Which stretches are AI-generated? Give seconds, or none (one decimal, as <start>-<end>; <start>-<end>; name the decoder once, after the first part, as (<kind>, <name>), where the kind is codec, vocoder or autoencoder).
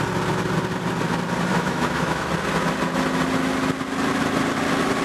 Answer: 1.5-2.3 (autoencoder, DAC-VAE)